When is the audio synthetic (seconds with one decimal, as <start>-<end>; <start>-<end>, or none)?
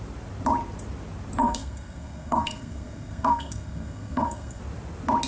1.4-4.6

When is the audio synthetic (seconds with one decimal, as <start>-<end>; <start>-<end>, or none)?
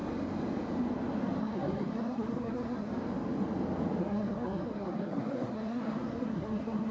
1.4-2.9; 4.0-6.9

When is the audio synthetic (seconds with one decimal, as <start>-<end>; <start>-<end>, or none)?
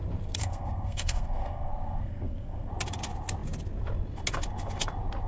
0.4-2.7